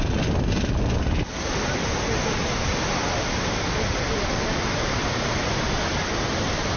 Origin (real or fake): real